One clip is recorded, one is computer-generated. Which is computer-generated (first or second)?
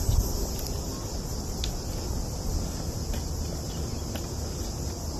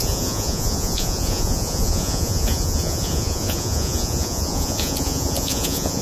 second